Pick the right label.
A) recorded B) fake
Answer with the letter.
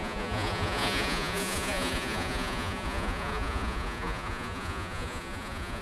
B